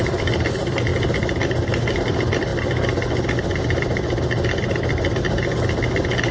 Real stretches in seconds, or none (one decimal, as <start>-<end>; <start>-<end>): 0.9-2.0; 2.5-6.3